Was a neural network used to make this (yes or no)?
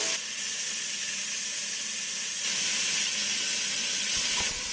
no